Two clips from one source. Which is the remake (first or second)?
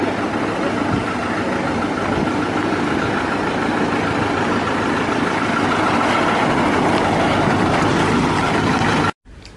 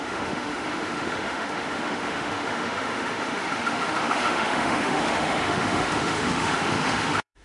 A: second